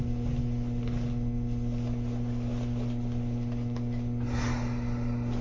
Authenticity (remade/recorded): recorded